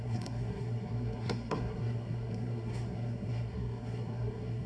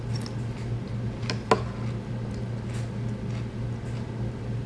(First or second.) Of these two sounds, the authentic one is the second